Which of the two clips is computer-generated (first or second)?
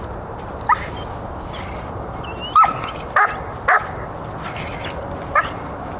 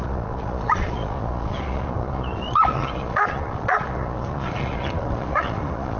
second